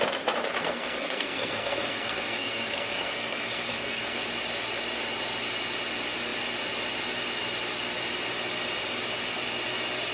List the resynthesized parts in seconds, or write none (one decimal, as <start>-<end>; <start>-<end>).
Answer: 0.6-4.2